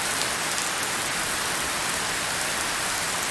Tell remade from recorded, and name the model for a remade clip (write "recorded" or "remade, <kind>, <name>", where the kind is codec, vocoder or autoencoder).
recorded